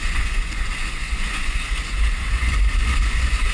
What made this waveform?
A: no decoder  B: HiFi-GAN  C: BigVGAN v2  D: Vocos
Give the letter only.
D